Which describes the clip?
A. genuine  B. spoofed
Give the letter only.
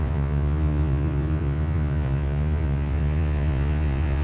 B